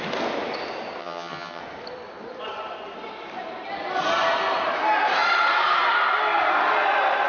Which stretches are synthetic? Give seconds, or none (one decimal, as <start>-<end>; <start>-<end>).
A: 1.0-1.6